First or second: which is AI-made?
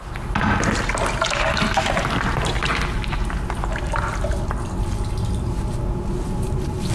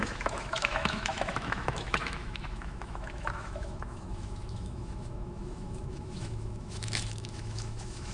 second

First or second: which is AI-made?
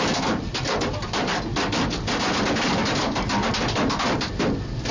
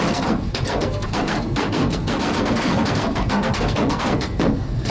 second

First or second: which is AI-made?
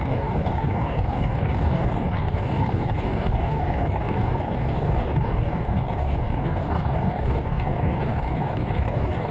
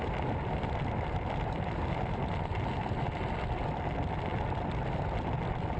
first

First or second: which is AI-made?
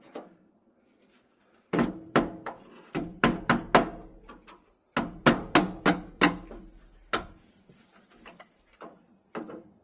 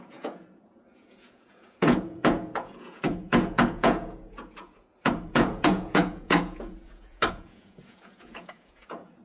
second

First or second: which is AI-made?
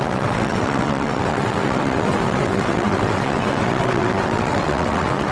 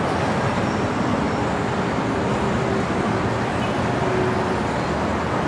first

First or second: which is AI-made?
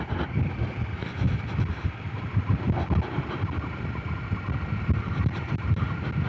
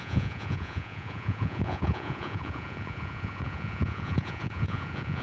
second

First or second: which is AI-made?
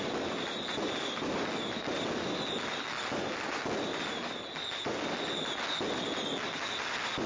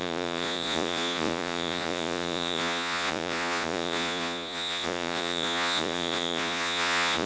second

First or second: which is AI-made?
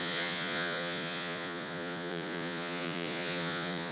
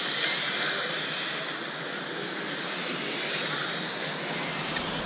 first